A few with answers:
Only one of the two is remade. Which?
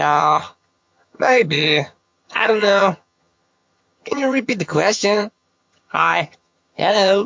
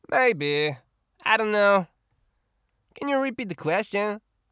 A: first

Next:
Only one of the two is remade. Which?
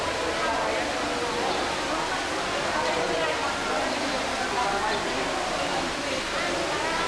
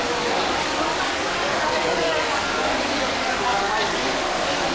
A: second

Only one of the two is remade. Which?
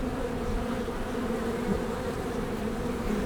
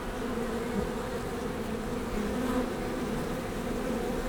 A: first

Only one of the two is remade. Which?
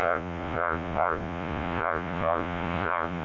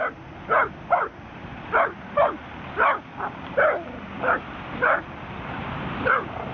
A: first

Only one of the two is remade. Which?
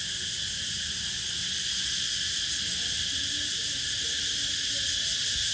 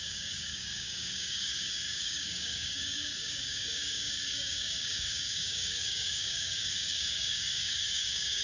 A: second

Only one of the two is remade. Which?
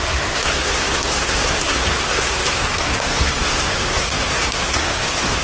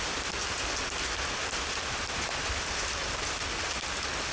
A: first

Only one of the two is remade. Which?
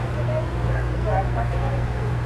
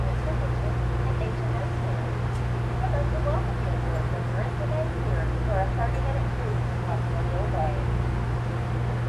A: first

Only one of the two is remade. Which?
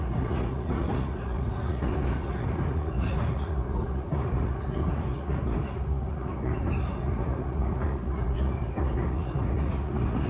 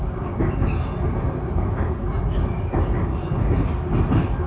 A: first